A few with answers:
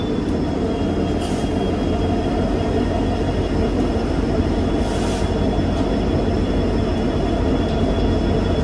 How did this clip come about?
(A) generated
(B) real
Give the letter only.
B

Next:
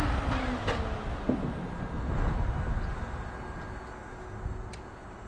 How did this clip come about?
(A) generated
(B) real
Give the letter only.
B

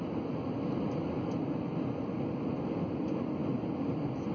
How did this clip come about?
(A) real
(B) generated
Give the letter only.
A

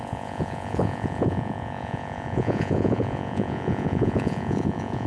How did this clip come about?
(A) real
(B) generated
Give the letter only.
B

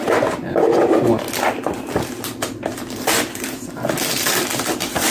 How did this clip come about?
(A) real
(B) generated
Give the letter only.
B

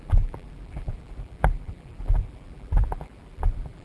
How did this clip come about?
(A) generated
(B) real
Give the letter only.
A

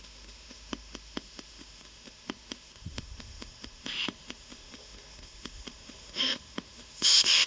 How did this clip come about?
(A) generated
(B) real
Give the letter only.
A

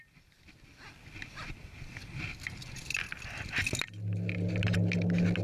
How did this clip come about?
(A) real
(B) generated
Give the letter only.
A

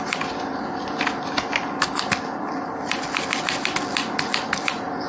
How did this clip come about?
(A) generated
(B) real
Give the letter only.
B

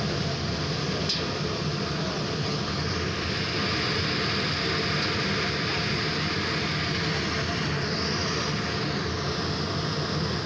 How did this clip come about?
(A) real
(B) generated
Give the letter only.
A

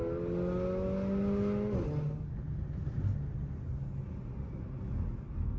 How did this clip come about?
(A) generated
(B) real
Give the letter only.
B